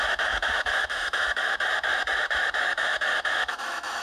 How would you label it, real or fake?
fake